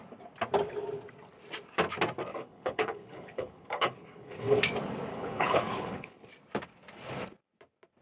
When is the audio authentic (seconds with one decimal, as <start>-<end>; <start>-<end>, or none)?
0.0-2.3; 4.6-5.1; 6.3-8.0